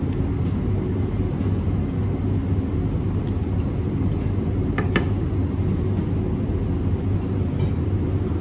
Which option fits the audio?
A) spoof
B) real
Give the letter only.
B